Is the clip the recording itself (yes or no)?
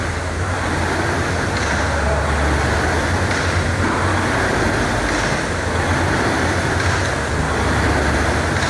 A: yes